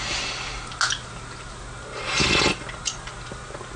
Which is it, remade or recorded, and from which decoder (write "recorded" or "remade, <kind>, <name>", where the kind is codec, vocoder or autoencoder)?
recorded